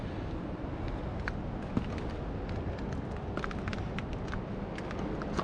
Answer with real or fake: real